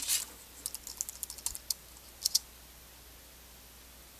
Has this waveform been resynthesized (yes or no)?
no